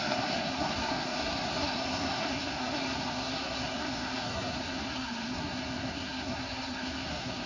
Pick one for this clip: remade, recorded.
remade